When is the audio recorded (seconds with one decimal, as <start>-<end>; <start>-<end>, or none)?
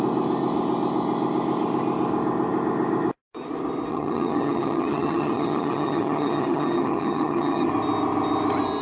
0.0-3.9; 7.7-8.8